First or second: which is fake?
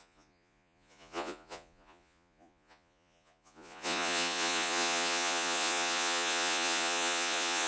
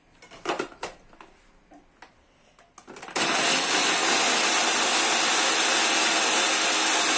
first